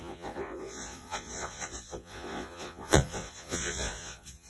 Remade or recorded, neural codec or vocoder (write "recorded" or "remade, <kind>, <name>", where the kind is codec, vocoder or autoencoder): remade, vocoder, Vocos